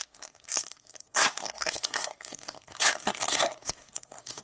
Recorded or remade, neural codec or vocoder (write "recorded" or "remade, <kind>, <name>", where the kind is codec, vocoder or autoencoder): remade, codec, SNAC